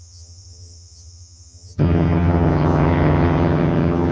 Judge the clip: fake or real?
fake